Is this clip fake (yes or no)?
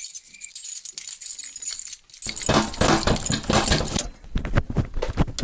no